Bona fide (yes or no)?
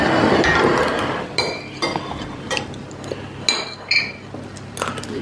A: yes